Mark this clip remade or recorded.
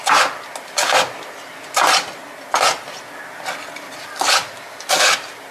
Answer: recorded